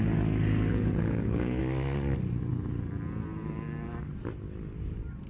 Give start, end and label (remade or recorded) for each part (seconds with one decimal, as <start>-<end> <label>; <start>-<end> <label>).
0.0-0.7 recorded; 0.7-1.6 remade; 1.6-5.3 recorded

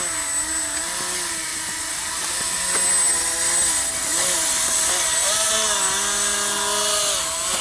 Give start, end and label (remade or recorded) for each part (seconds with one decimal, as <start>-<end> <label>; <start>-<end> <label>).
0.0-1.5 recorded; 1.5-2.6 remade; 2.6-4.1 recorded; 4.1-5.5 remade; 5.5-7.6 recorded

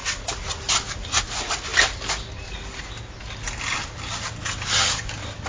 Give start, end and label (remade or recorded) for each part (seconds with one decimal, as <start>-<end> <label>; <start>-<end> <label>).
0.0-5.5 recorded

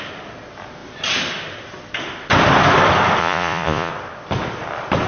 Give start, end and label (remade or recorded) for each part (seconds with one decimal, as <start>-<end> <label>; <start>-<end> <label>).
0.0-3.2 recorded; 3.2-3.9 remade; 3.9-5.1 recorded

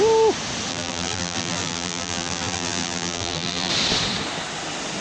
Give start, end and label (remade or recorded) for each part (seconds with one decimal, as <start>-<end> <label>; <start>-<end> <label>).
0.0-0.7 recorded; 0.7-3.7 remade; 3.7-5.0 recorded

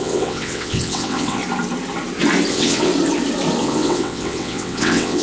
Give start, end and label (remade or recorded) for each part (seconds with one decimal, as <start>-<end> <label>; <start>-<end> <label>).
0.0-1.4 remade; 1.4-2.5 recorded; 2.5-2.9 remade; 2.9-3.6 recorded; 3.6-5.2 remade